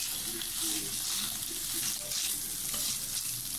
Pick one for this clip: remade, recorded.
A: recorded